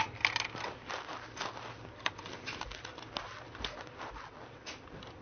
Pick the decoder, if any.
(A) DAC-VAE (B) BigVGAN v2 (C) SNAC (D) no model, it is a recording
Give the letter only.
D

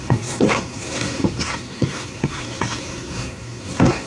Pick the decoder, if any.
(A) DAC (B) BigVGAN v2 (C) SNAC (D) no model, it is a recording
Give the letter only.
C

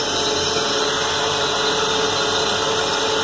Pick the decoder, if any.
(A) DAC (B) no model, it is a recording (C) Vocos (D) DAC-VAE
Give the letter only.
B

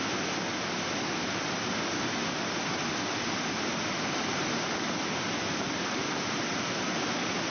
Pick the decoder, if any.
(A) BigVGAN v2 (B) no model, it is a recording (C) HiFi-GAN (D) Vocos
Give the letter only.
B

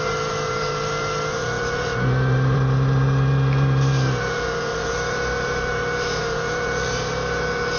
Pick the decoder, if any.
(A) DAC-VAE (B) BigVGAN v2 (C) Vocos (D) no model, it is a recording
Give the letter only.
B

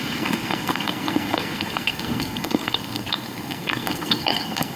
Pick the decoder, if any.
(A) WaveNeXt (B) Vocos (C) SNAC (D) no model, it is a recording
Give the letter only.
C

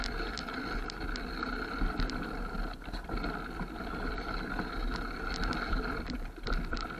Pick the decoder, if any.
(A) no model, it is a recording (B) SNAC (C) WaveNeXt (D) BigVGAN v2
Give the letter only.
A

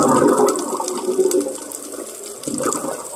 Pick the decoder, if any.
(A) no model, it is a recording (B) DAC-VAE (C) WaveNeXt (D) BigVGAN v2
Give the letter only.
A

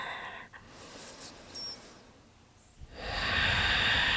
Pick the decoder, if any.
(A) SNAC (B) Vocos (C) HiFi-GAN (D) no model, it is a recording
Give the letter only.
D